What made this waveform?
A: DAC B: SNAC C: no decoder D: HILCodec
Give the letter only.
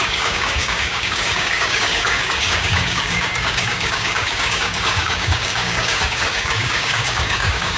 A